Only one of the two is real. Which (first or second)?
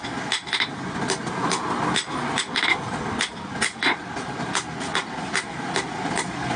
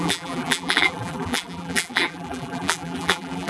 first